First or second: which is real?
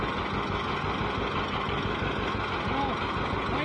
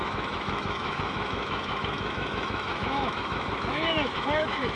first